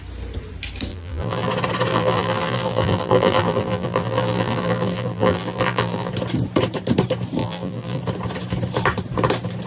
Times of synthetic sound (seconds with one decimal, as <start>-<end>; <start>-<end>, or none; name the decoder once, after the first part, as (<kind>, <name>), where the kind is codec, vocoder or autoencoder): 0.9-1.5 (vocoder, BigVGAN v2); 1.9-6.1; 7.4-8.0